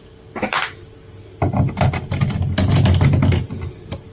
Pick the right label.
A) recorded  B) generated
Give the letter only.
A